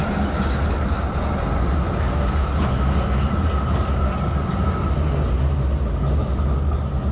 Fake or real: real